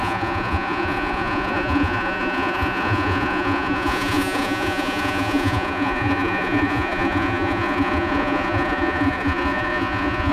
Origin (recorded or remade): remade